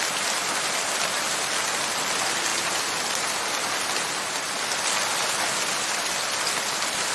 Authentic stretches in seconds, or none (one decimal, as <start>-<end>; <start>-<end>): 0.0-7.1